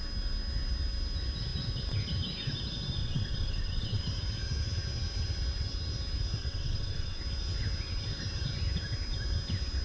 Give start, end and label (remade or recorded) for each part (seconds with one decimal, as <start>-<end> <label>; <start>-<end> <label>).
0.0-3.0 recorded; 3.0-4.0 remade; 4.0-6.4 recorded; 6.4-7.2 remade; 7.2-9.8 recorded